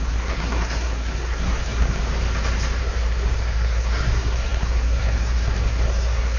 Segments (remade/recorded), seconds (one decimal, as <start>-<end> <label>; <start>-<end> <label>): 0.0-2.0 remade; 2.0-2.8 recorded; 2.8-6.4 remade